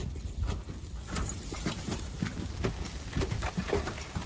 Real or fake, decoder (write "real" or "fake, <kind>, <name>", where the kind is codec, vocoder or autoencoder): real